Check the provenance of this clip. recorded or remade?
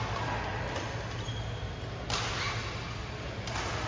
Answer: recorded